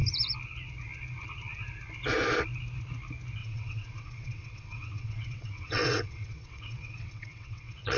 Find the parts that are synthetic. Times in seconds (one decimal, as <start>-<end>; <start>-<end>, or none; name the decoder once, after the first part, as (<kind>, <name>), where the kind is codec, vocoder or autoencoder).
3.4-8.0 (vocoder, WaveNeXt)